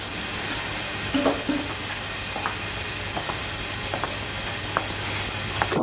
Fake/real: real